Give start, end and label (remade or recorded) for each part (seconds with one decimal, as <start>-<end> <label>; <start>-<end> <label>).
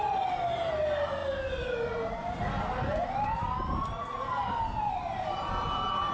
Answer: 0.0-1.2 remade; 1.2-4.9 recorded; 4.9-6.1 remade